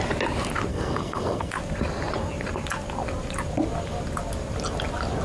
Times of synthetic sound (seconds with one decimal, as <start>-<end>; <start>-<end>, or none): 0.7-1.5